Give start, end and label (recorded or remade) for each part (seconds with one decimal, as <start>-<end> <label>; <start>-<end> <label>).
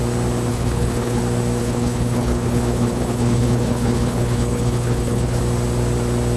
0.0-0.5 recorded; 0.5-1.2 remade; 1.2-1.6 recorded; 1.6-5.4 remade; 5.4-6.4 recorded